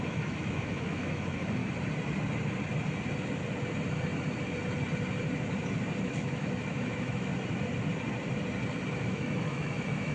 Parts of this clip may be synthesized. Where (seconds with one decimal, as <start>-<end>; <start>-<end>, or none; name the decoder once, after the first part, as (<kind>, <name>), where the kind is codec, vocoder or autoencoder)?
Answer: 0.0-1.6 (autoencoder, DAC-VAE); 6.0-7.3; 9.0-10.1